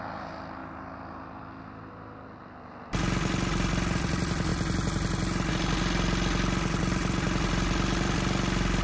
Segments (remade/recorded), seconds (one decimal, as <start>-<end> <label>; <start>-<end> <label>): 0.0-8.8 recorded